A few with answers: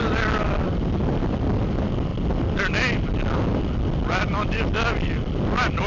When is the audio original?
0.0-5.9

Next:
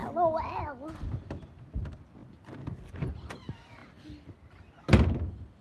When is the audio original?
0.0-5.6

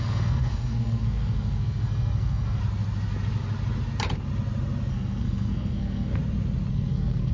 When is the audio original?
2.6-4.9; 6.1-6.7